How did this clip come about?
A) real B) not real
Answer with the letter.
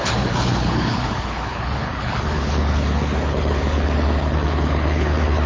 B